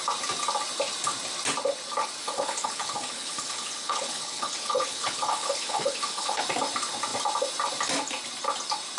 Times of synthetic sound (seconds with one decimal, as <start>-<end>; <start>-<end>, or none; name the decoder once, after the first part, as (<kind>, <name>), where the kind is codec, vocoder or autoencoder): 2.2-6.4 (codec, HILCodec)